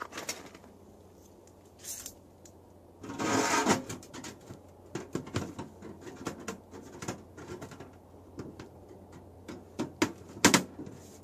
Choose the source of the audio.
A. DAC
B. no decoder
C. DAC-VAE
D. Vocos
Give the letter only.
B